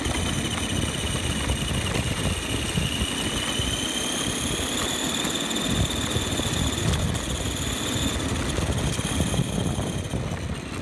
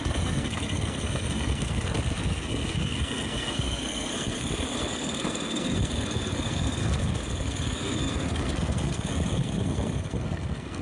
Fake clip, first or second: second